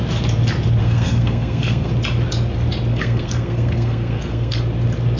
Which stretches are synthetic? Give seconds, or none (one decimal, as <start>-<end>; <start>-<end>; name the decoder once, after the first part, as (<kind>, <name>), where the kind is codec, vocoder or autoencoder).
0.8-1.9 (codec, SNAC); 2.9-4.6